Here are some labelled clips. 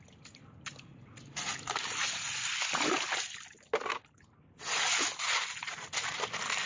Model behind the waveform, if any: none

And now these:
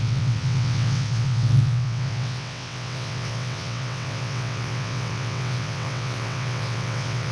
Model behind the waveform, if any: vocoder, WaveNeXt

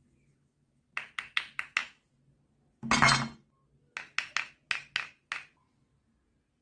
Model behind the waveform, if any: none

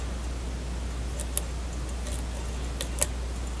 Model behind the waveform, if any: none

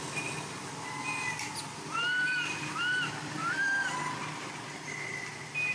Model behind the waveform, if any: none